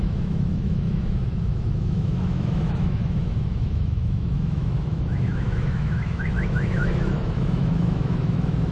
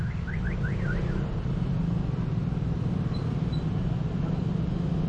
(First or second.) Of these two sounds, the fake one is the first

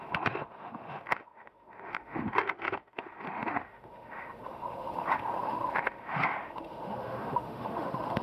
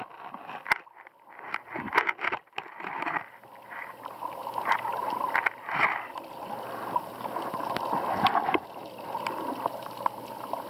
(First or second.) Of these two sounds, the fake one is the first